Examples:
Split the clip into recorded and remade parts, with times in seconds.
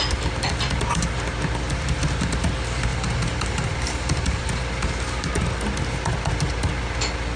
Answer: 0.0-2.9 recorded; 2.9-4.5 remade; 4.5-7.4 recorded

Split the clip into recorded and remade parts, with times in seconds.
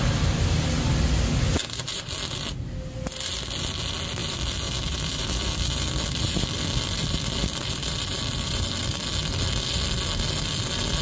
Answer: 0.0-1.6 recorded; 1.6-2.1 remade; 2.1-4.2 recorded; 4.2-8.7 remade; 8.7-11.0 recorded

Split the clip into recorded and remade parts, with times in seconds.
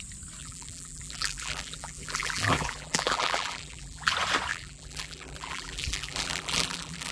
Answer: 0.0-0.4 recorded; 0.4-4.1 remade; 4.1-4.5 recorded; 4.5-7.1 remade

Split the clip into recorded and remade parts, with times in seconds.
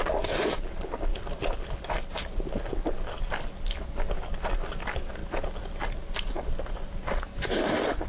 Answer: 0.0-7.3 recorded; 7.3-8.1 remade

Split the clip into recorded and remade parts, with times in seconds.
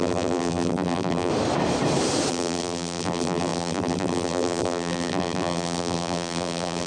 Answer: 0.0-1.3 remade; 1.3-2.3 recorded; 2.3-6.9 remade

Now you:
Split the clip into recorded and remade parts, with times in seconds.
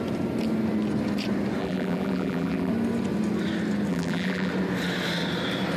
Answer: 0.0-1.6 recorded; 1.6-2.7 remade; 2.7-3.9 recorded; 3.9-4.5 remade; 4.5-5.8 recorded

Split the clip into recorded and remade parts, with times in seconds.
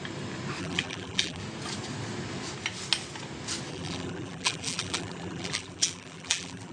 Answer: 0.0-0.6 recorded; 0.6-1.4 remade; 1.4-3.7 recorded; 3.7-6.7 remade